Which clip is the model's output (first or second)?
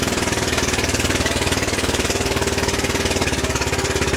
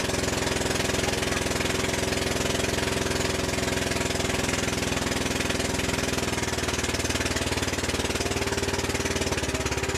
first